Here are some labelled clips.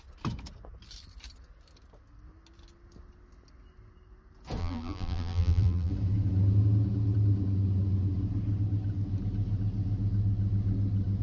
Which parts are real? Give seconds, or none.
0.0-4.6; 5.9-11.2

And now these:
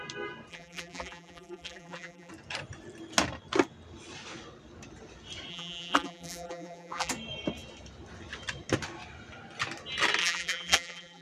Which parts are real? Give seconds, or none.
0.0-0.5; 2.3-5.5; 7.1-10.2